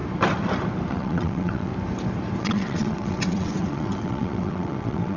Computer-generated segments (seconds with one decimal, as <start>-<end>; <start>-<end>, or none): 0.9-1.7; 2.4-5.2